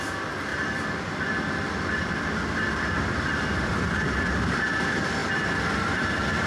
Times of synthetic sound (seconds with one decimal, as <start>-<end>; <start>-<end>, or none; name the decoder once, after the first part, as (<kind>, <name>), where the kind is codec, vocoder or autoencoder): 0.5-4.4 (vocoder, BigVGAN v2); 5.2-5.9